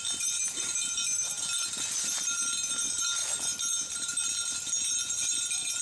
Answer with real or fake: real